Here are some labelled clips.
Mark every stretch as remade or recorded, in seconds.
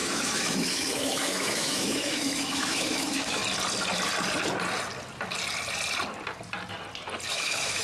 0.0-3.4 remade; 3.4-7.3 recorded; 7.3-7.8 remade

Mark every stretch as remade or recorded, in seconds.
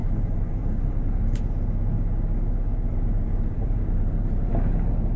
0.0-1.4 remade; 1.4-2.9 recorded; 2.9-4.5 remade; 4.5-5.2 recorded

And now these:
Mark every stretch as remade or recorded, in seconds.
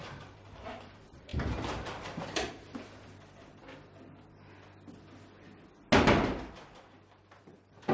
0.0-3.6 remade; 3.6-7.4 recorded; 7.4-7.9 remade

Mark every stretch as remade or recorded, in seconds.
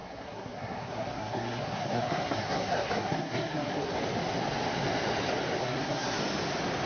0.0-3.9 remade; 3.9-5.6 recorded; 5.6-6.2 remade; 6.2-6.9 recorded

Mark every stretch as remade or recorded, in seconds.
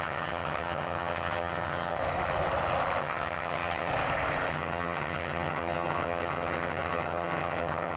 0.0-2.0 remade; 2.0-3.0 recorded; 3.0-3.9 remade; 3.9-4.5 recorded; 4.5-8.0 remade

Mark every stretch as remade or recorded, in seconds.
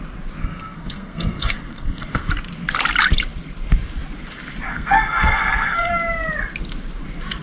0.0-0.4 recorded; 0.4-2.3 remade; 2.3-4.7 recorded; 4.7-5.9 remade; 5.9-7.4 recorded